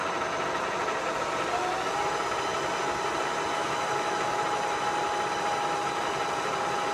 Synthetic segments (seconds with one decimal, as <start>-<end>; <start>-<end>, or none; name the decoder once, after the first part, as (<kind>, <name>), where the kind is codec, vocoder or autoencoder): 3.6-4.4 (autoencoder, DAC-VAE)